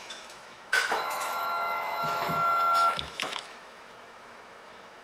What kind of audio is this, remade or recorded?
remade